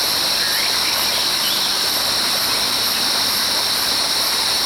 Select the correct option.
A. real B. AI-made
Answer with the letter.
A